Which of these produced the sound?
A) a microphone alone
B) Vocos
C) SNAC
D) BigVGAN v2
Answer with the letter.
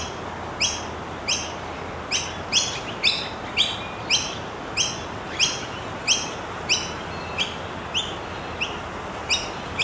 A